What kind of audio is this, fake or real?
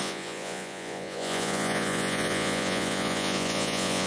fake